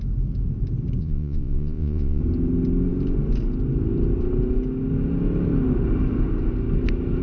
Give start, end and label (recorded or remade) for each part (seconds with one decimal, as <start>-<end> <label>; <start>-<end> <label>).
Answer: 0.0-1.0 recorded; 1.0-2.2 remade; 2.2-7.2 recorded